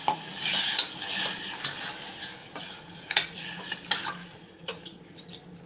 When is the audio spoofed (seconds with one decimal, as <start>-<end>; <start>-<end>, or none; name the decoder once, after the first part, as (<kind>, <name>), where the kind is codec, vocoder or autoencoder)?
2.4-3.6 (vocoder, Vocos); 4.2-5.0